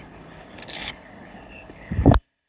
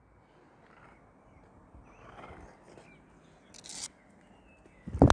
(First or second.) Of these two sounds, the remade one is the first